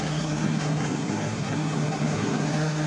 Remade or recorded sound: remade